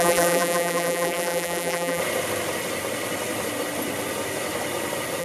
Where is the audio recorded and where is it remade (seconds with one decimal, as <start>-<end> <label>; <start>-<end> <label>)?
0.0-2.0 remade; 2.0-5.2 recorded